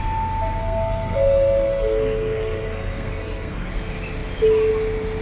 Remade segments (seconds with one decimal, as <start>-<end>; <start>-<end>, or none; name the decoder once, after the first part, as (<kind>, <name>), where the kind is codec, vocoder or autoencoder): 0.6-3.7 (codec, SNAC)

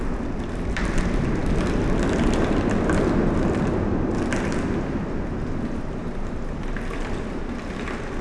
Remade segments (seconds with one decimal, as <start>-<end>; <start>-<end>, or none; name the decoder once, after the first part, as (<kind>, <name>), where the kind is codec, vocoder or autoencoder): none

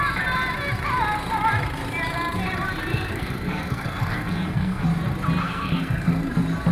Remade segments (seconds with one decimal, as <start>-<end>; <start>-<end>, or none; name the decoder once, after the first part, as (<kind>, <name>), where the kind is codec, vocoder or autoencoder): 2.9-4.8 (codec, SNAC); 5.4-6.3

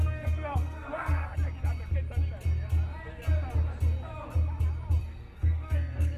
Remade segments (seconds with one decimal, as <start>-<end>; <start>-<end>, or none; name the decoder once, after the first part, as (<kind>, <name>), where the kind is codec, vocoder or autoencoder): 0.0-1.3 (codec, SNAC); 5.0-6.2

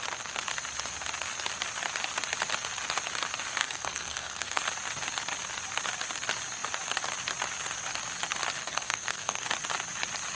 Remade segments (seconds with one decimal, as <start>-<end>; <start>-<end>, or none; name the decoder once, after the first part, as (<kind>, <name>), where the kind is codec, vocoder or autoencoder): 3.6-4.6 (codec, SNAC); 8.6-9.5

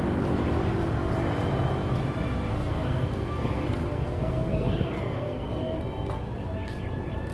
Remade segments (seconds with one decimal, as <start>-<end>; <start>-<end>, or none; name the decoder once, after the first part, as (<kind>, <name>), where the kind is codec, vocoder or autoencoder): 2.5-5.8 (codec, SNAC)

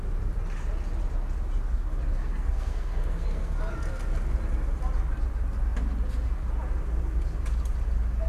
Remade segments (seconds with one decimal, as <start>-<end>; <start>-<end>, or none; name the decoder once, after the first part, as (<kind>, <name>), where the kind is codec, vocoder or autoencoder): 2.2-3.6 (codec, SNAC)

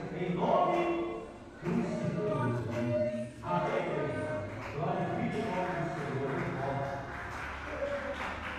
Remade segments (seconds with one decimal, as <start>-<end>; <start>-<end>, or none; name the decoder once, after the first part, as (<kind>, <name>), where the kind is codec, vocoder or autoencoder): 2.0-3.8 (codec, SNAC)